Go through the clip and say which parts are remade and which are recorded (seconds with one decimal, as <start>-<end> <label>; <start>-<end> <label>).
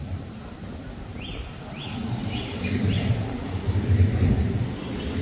0.0-5.2 recorded